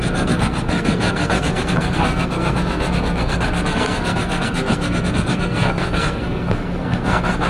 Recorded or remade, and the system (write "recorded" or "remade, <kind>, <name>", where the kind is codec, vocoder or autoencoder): remade, codec, SNAC